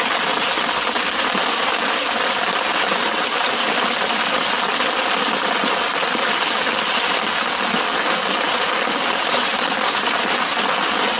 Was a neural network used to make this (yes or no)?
no